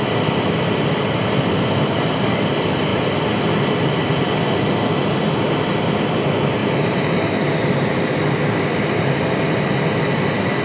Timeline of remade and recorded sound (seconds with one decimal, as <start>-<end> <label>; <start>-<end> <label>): 0.0-6.6 recorded; 6.6-8.0 remade; 8.0-10.6 recorded